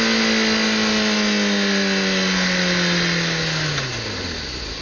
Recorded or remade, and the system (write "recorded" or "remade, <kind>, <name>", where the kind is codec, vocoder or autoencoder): recorded